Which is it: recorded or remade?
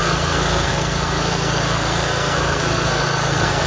remade